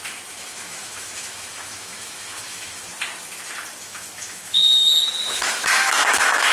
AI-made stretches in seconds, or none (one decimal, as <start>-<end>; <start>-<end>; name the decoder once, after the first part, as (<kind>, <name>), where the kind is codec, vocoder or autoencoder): 0.0-2.9 (autoencoder, DAC-VAE); 3.8-4.6; 5.2-6.5